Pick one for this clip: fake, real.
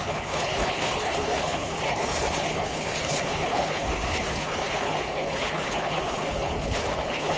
fake